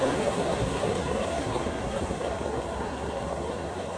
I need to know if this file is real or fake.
fake